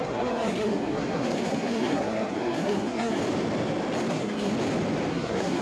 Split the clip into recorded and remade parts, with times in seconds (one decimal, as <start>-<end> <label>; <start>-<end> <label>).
0.0-3.2 remade; 3.2-4.1 recorded; 4.1-4.5 remade; 4.5-5.1 recorded; 5.1-5.6 remade